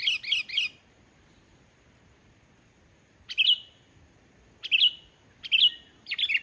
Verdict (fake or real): real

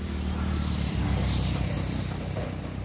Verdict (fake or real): fake